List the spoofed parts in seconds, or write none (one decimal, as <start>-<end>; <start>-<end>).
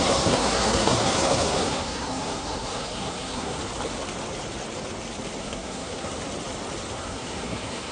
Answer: 0.0-3.6; 5.4-6.1; 6.9-7.9